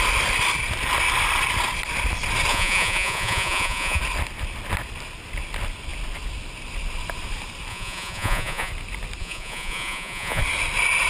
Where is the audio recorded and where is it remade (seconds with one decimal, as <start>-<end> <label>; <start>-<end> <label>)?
0.0-2.5 recorded; 2.5-4.0 remade; 4.0-7.7 recorded; 7.7-8.7 remade; 8.7-9.2 recorded; 9.2-10.4 remade; 10.4-11.1 recorded